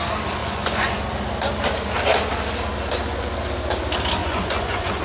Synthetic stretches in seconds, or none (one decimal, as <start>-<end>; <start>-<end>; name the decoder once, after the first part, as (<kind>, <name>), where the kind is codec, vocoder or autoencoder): 0.4-1.0 (vocoder, Vocos); 4.2-5.0

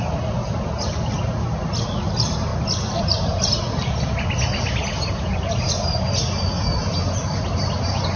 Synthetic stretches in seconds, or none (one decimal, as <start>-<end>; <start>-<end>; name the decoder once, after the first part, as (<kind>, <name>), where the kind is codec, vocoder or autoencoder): none

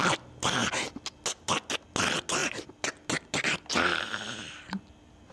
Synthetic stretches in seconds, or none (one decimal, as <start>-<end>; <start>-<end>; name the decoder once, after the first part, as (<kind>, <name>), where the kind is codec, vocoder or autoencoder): none

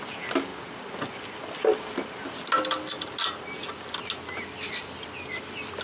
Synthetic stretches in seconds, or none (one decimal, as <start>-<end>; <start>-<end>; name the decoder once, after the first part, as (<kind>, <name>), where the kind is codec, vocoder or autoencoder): none